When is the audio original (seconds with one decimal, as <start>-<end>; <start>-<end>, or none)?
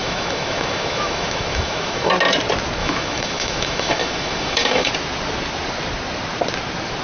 2.1-2.8; 4.9-7.0